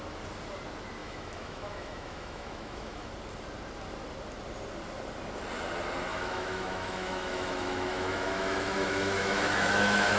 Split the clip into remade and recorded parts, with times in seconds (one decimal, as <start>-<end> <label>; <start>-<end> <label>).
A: 0.0-1.0 recorded; 1.0-3.1 remade; 3.1-6.1 recorded; 6.1-10.2 remade